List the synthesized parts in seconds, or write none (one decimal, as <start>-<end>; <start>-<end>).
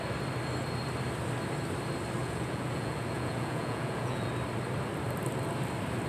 2.2-4.3